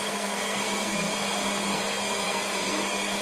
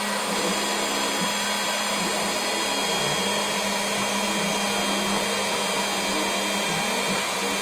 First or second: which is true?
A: second